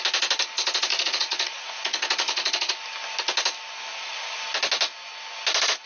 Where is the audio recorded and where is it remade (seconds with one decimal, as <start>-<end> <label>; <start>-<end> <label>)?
0.0-0.9 recorded; 0.9-2.7 remade; 2.7-3.9 recorded; 3.9-4.4 remade; 4.4-5.9 recorded